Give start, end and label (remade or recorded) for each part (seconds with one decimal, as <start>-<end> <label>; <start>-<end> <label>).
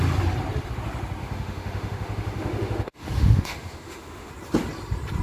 0.0-1.2 recorded; 1.2-4.3 remade; 4.3-5.2 recorded